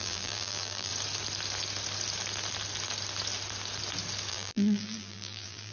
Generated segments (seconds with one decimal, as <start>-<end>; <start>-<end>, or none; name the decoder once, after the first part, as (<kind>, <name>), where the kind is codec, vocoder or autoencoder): 0.0-0.9 (vocoder, BigVGAN v2); 4.3-5.7